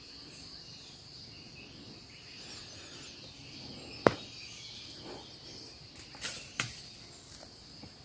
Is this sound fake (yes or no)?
no